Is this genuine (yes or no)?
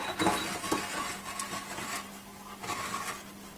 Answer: yes